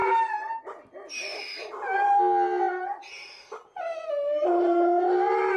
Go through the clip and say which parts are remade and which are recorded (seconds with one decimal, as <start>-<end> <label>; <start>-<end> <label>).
0.0-5.6 recorded